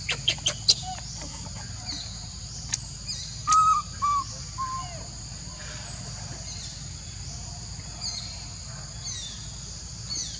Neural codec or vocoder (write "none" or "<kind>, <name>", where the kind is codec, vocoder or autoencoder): none